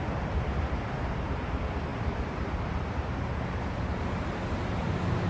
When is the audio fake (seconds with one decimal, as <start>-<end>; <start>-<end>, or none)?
none

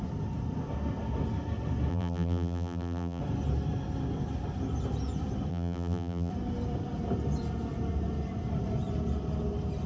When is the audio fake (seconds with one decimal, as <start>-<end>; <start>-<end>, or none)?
1.9-3.2; 5.5-6.3

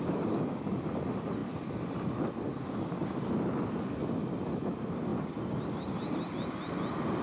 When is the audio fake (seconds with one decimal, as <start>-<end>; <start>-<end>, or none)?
none

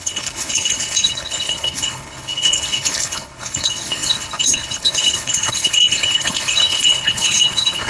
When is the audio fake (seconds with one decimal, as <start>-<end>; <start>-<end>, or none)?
0.0-7.9

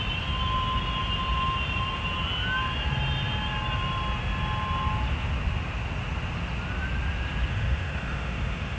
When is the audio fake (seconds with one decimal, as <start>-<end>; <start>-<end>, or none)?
7.5-8.8

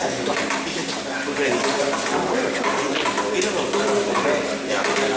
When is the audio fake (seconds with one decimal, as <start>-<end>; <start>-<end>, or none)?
none

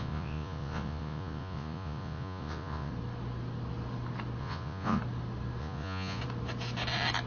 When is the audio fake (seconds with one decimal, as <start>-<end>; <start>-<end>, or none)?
0.0-2.9; 4.4-5.0; 5.6-6.2